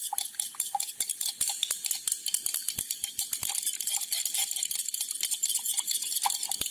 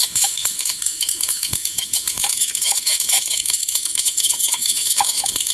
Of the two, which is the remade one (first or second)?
second